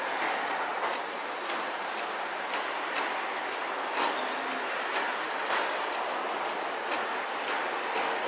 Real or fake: real